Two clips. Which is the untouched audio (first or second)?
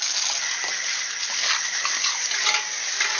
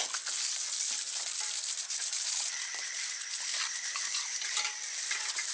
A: first